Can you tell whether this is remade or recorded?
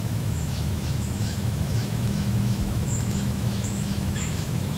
remade